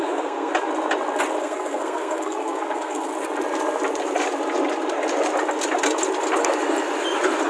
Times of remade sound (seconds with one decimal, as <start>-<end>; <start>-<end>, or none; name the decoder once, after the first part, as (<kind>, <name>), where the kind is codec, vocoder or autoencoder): 0.0-0.5 (codec, SNAC); 1.4-3.1